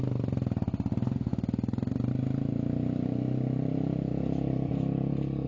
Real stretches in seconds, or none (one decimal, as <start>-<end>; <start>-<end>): 0.0-4.1

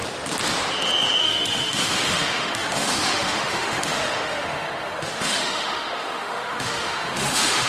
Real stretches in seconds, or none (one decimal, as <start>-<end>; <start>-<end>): 0.0-1.2

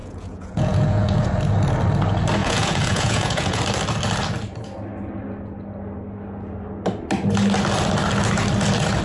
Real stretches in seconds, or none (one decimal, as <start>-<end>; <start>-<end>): 1.3-2.4; 3.6-9.0

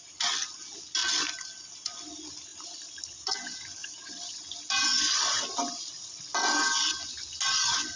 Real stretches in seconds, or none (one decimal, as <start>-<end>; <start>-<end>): 0.0-1.0; 1.6-2.5; 3.3-3.8; 6.9-8.0

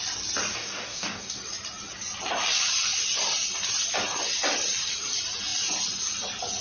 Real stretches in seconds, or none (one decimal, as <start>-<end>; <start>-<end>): 0.0-0.5; 1.4-6.6

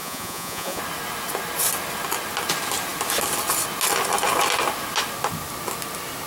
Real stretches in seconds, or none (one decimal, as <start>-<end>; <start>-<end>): 0.8-6.3

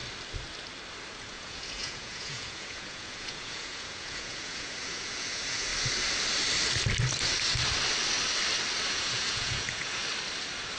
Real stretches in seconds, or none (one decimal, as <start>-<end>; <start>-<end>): 0.0-1.2; 5.7-8.9; 10.0-10.8